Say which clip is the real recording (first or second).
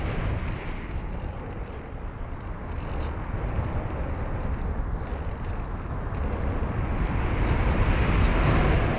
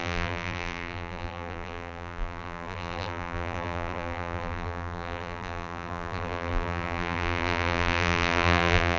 first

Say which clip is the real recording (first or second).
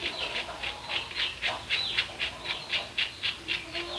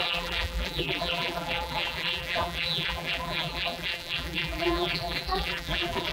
first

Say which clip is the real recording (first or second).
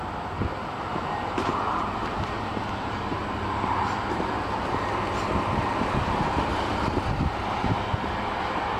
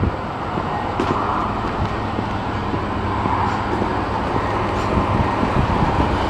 second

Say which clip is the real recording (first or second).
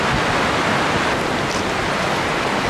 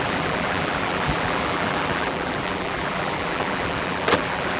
first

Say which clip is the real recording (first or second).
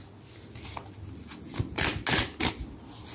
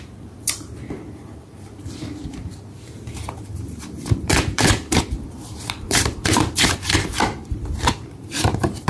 first